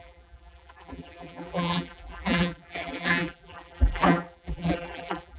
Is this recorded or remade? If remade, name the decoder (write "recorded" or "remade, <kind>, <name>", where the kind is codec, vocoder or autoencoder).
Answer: remade, vocoder, BigVGAN v2